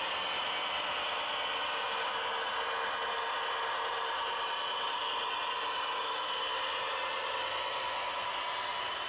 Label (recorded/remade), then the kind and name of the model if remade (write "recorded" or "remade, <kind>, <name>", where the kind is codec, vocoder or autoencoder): recorded